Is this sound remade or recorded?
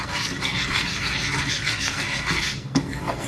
remade